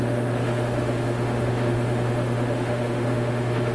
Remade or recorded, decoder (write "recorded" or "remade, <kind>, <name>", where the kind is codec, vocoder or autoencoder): remade, autoencoder, DAC-VAE